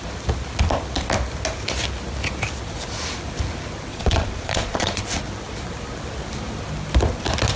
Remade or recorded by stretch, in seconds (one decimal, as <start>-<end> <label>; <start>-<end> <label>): 0.0-3.9 recorded; 3.9-5.0 remade; 5.0-7.6 recorded